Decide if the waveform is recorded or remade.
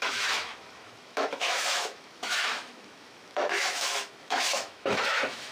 remade